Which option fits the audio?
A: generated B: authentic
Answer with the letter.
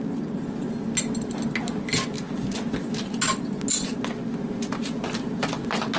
B